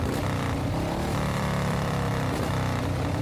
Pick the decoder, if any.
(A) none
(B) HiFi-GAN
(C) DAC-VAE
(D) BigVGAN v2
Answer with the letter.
D